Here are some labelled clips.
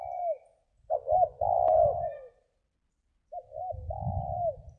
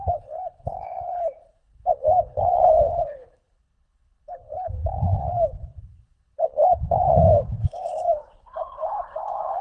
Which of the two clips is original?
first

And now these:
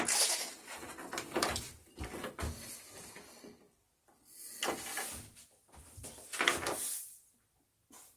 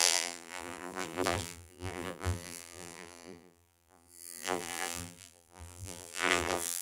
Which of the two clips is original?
first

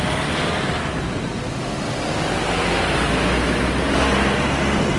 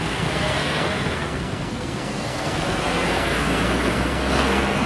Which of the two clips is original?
first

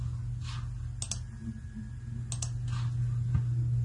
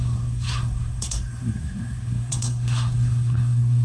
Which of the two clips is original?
first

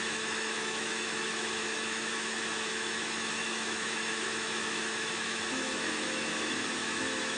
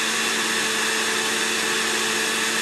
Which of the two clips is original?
second